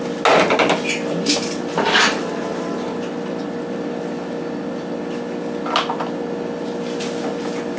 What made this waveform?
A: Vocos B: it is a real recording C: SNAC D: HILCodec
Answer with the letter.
B